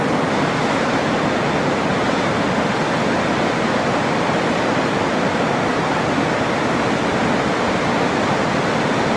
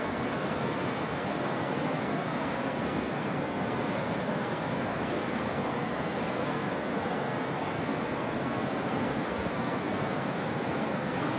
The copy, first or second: second